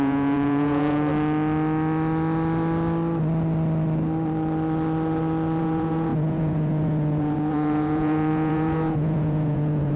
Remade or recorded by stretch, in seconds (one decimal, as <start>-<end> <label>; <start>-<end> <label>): 0.0-1.1 remade; 1.1-5.6 recorded; 5.6-10.0 remade